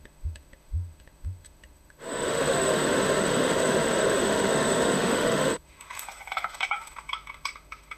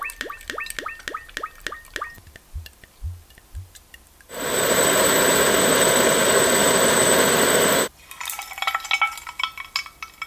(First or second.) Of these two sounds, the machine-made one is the first